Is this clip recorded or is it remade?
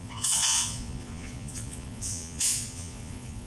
remade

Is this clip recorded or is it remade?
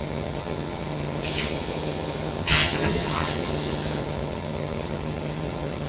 remade